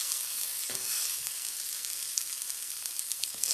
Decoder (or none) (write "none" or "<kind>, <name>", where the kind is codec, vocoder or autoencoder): codec, SNAC